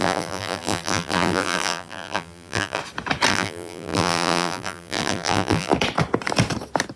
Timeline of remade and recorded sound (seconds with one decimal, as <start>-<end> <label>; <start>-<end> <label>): 0.0-2.8 remade; 2.8-3.3 recorded; 3.3-5.7 remade; 5.7-7.0 recorded